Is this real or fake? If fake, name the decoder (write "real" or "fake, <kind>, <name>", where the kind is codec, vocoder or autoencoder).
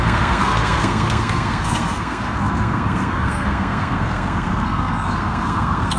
fake, codec, SNAC